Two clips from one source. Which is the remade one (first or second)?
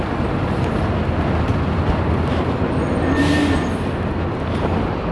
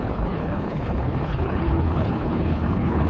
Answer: second